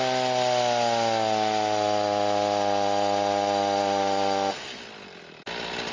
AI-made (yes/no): no